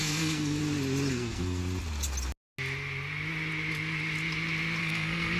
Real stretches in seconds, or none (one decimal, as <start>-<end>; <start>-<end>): 0.6-1.1; 1.6-4.8